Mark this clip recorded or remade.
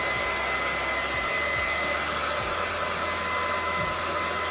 recorded